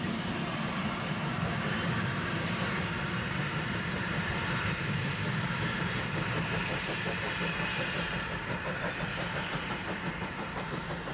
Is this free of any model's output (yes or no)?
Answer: no